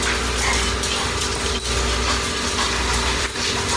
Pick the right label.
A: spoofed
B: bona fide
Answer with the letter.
A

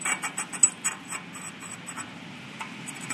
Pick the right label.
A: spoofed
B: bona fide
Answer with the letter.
B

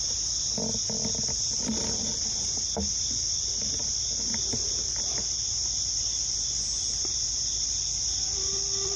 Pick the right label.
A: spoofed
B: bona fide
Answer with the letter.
B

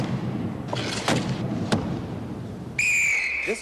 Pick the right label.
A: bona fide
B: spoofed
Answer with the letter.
A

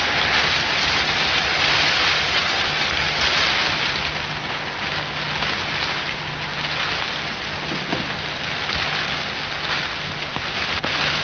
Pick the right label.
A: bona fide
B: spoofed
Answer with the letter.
A